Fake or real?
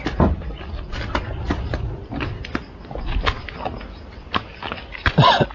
real